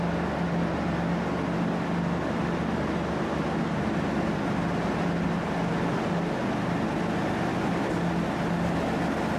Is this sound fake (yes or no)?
no